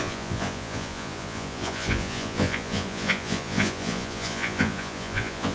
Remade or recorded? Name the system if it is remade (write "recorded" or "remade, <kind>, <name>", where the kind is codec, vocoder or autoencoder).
remade, vocoder, Vocos